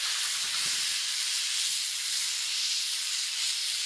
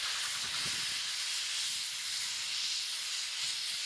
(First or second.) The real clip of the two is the second